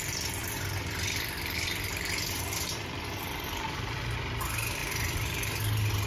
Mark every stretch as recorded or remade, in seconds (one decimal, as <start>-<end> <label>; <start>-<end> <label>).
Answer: 0.0-0.4 recorded; 0.4-4.0 remade; 4.0-4.8 recorded; 4.8-6.1 remade